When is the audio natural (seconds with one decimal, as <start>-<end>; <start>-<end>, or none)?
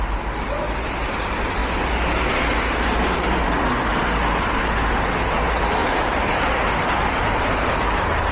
0.0-5.8; 6.4-8.3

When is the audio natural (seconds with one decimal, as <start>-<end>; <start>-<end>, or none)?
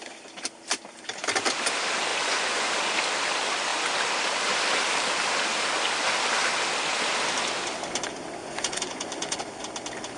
0.0-2.1; 2.7-8.4; 9.4-10.2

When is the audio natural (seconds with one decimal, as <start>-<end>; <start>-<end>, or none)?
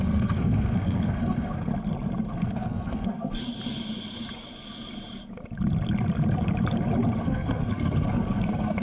1.7-2.3; 3.4-7.2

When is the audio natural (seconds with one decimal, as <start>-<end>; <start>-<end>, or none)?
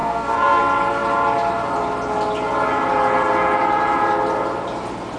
0.6-5.2